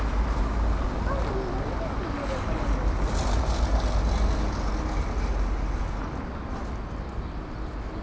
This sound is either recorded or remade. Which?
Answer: recorded